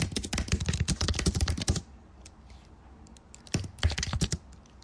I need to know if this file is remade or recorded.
recorded